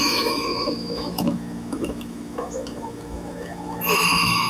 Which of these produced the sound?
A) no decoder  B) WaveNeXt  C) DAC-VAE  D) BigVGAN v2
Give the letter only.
C